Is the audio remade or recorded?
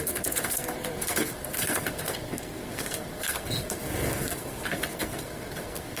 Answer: remade